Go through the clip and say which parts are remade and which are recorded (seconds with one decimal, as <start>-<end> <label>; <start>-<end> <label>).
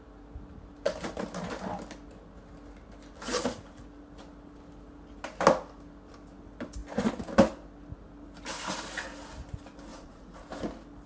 0.0-9.9 recorded; 9.9-10.5 remade; 10.5-11.1 recorded